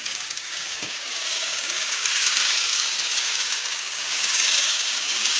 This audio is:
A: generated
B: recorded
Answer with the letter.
A